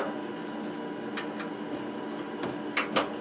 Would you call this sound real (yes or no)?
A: yes